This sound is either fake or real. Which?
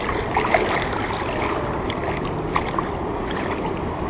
fake